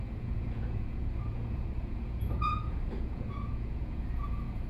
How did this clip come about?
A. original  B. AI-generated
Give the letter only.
B